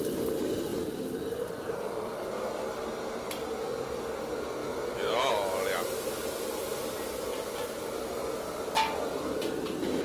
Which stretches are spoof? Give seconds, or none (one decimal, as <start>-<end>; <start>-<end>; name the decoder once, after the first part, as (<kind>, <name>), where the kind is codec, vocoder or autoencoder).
4.6-5.3 (vocoder, BigVGAN v2); 7.3-8.1